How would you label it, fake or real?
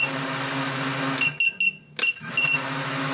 real